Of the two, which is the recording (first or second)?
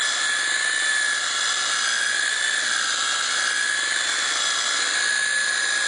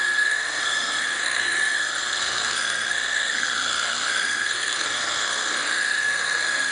first